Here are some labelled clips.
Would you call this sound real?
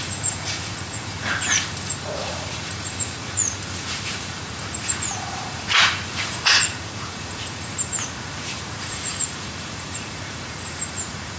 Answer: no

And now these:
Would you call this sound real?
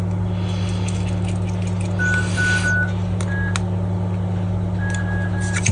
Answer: yes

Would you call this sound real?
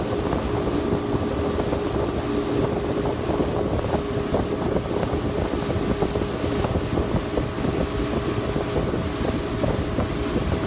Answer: yes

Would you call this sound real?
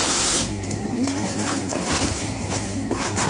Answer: no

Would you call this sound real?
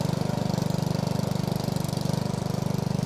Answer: yes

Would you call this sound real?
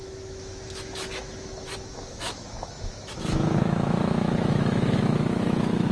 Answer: no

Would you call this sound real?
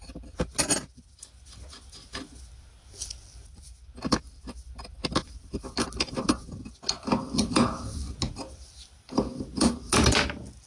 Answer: yes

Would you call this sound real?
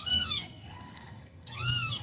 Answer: no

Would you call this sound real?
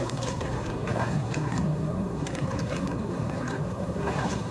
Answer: no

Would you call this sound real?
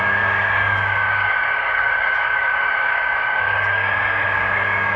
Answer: no